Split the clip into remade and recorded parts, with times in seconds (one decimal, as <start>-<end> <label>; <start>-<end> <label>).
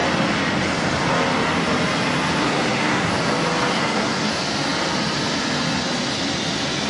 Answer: 0.0-2.4 recorded; 2.4-3.1 remade; 3.1-3.7 recorded; 3.7-4.3 remade; 4.3-6.9 recorded